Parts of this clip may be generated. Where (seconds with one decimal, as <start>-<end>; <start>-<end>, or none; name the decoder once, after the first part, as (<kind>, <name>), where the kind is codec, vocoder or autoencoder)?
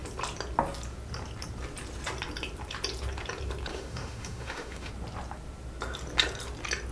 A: 3.7-4.9 (autoencoder, DAC-VAE)